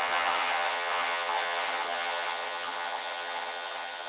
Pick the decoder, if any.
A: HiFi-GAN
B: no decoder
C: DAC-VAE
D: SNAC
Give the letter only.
A